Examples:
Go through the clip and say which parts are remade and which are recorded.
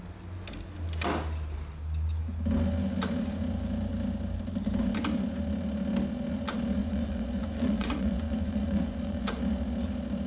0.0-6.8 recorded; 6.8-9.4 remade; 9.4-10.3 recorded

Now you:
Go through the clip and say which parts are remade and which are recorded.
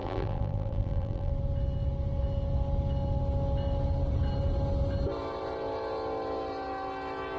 0.0-1.3 remade; 1.3-7.4 recorded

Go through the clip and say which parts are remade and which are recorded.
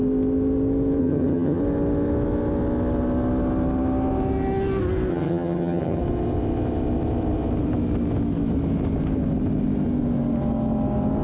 0.0-1.0 recorded; 1.0-1.6 remade; 1.6-5.1 recorded; 5.1-6.0 remade; 6.0-11.2 recorded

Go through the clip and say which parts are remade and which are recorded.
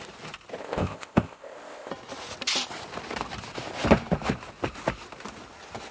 0.0-0.6 recorded; 0.6-1.9 remade; 1.9-5.9 recorded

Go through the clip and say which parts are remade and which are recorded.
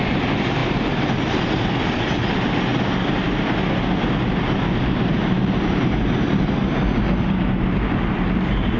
0.0-2.7 remade; 2.7-4.4 recorded; 4.4-8.8 remade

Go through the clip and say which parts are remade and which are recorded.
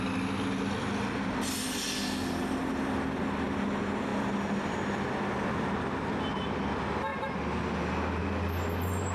0.0-9.1 recorded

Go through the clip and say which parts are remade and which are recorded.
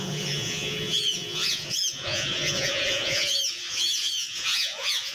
0.0-5.1 remade